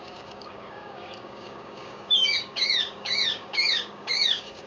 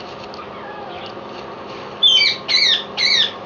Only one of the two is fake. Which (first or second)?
first